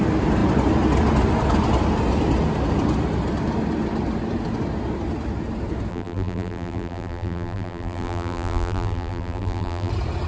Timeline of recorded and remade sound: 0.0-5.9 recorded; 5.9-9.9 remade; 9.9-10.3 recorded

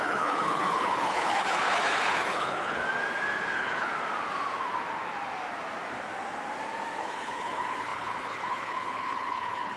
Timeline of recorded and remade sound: 0.0-2.8 remade; 2.8-3.5 recorded; 3.5-3.9 remade; 3.9-7.0 recorded; 7.0-9.8 remade

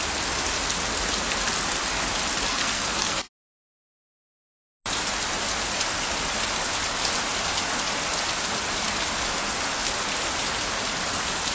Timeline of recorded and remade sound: 0.0-2.5 recorded; 2.5-3.2 remade; 3.2-11.5 recorded

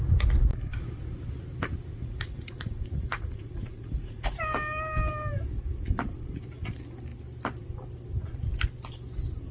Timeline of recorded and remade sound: 0.0-1.9 recorded; 1.9-4.4 remade; 4.4-9.5 recorded

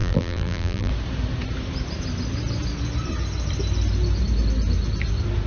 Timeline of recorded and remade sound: 0.0-0.9 remade; 0.9-5.5 recorded